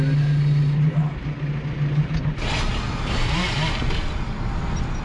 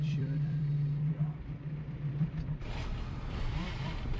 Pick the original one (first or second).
first